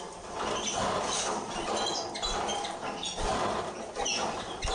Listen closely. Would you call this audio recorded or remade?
recorded